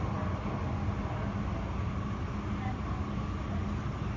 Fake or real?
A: real